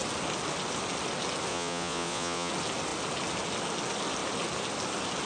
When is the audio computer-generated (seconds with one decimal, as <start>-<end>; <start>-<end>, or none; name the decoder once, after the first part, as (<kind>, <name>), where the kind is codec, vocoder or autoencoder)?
1.5-2.5 (vocoder, Vocos)